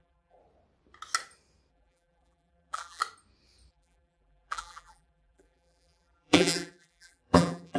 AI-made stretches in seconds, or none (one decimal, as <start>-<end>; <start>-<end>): 0.0-0.4; 1.7-3.0; 3.7-7.8